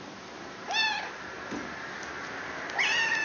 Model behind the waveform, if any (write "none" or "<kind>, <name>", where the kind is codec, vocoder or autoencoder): none